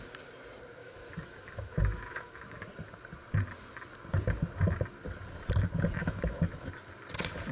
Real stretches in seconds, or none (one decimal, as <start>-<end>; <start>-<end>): 0.0-0.8; 2.7-6.0; 6.7-7.5